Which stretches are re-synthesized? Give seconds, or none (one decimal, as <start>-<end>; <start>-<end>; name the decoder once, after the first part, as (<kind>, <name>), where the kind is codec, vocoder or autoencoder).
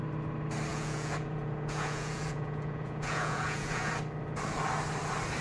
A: 0.7-3.9 (vocoder, Vocos)